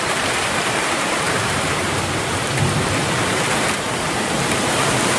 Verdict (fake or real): fake